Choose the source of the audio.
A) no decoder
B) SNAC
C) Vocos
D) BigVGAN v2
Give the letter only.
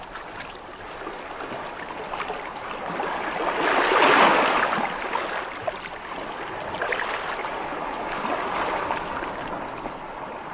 A